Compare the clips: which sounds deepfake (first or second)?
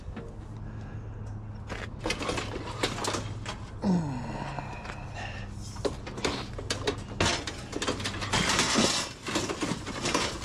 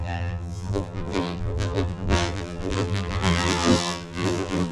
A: second